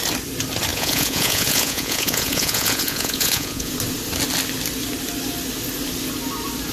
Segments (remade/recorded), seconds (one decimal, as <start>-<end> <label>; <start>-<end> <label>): 0.0-0.7 recorded; 0.7-3.7 remade; 3.7-6.7 recorded